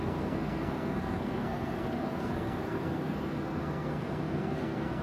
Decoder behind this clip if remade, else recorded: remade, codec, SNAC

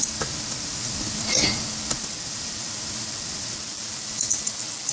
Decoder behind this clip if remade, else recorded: recorded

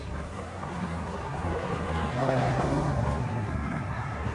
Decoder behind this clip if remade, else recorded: remade, codec, SNAC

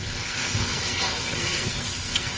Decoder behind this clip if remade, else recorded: remade, codec, SNAC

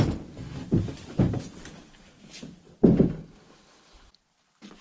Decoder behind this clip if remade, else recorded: recorded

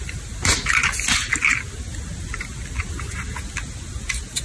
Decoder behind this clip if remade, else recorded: recorded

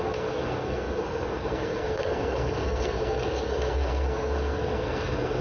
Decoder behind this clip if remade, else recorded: remade, codec, SNAC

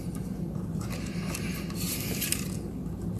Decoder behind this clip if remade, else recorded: recorded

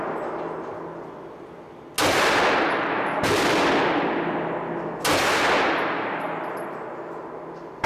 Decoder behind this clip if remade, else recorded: recorded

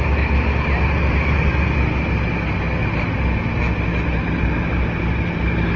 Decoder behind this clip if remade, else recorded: recorded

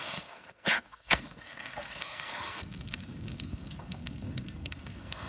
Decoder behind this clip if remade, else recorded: remade, codec, SNAC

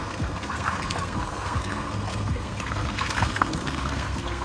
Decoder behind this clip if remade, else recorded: remade, codec, SNAC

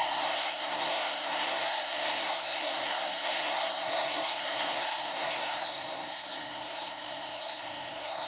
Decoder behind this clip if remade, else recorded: remade, codec, SNAC